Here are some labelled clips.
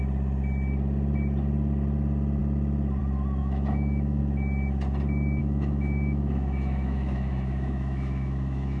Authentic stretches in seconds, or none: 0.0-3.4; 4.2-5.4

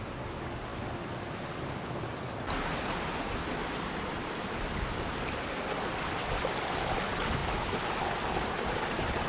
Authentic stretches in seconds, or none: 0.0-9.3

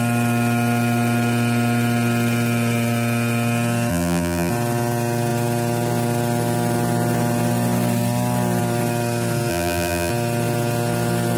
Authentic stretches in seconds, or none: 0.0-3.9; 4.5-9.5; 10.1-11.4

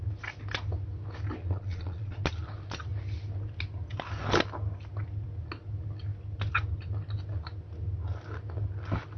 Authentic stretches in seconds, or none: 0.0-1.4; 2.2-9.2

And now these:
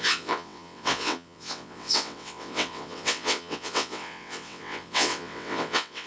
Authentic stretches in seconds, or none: none